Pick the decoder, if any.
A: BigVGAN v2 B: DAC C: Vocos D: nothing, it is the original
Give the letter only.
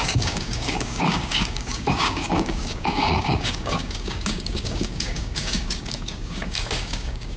B